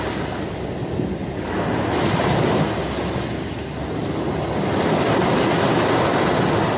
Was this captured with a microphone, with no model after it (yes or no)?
yes